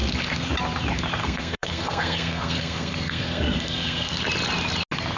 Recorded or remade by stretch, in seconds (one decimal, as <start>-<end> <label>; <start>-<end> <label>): 0.0-1.2 recorded; 1.2-4.2 remade; 4.2-5.2 recorded